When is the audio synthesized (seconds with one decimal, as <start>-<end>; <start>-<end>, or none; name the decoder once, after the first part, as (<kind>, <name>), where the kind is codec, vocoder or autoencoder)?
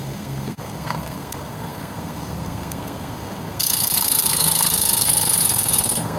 0.0-6.2 (codec, SNAC)